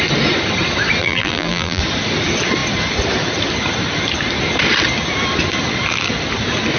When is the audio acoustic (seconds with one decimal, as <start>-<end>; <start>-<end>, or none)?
0.0-1.0; 1.8-6.8